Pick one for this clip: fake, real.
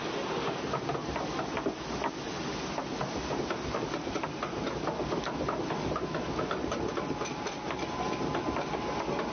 real